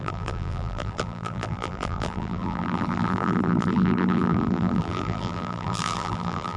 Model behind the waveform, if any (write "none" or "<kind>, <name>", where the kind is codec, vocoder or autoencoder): vocoder, BigVGAN v2